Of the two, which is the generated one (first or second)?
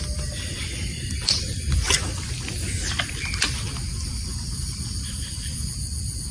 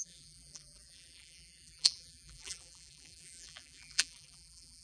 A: second